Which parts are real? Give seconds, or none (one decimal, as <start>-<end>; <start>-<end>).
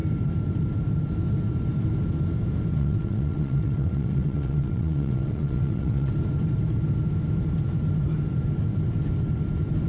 0.0-2.7; 6.1-9.9